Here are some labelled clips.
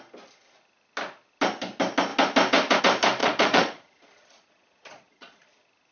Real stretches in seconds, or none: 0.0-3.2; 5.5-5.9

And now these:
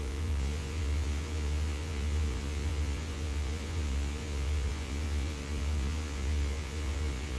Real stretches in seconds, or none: none

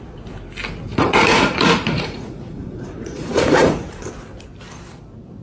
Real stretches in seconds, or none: 0.0-0.9; 4.1-5.4

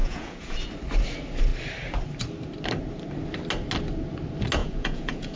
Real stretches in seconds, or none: 0.7-4.6

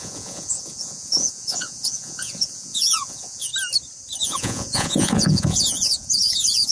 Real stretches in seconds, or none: 3.5-4.2

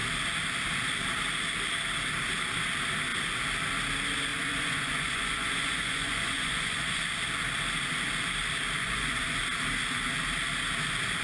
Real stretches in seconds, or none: 0.0-4.3; 7.0-8.8; 9.4-11.2

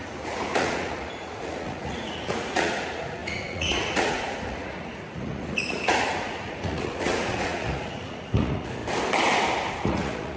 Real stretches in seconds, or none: 8.8-9.7